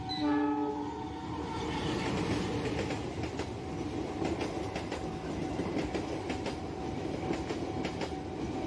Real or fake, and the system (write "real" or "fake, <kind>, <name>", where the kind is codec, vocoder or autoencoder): real